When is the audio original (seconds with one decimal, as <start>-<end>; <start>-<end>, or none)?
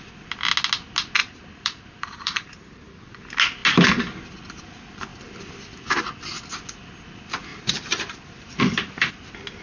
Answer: 0.0-1.2; 3.0-7.5; 9.1-9.6